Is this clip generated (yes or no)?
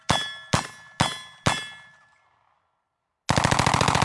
no